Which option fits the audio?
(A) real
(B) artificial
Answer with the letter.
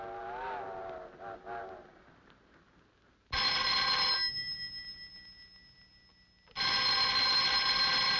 A